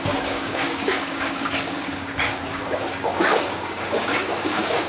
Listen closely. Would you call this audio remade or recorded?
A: remade